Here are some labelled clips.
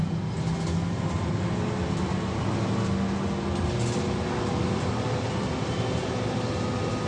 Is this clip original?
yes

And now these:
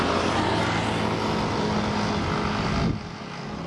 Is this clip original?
yes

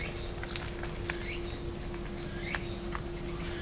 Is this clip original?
yes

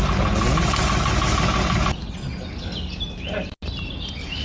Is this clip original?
yes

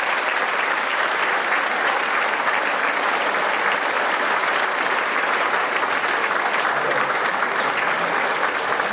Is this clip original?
no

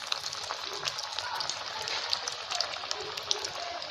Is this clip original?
yes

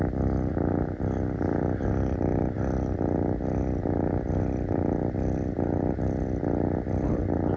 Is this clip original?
yes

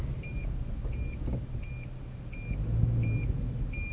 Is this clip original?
yes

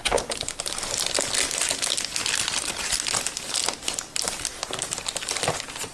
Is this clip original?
yes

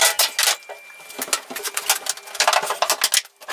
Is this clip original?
yes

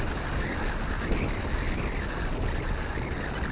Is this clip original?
yes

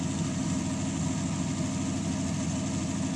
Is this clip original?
yes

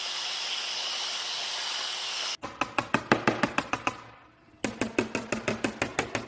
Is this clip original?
yes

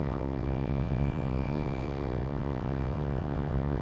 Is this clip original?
no